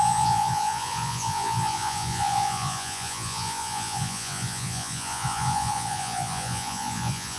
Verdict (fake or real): fake